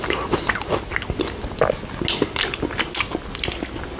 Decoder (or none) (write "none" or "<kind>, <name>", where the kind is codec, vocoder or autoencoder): none